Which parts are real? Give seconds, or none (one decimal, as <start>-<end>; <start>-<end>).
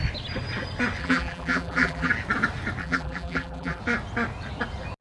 0.0-1.0; 2.1-2.8; 3.8-5.0